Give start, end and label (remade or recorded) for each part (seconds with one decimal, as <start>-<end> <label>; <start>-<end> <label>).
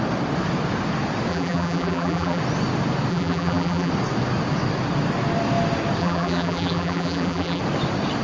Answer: 0.0-1.3 recorded; 1.3-2.4 remade; 2.4-3.1 recorded; 3.1-3.9 remade; 3.9-6.0 recorded; 6.0-7.6 remade; 7.6-8.2 recorded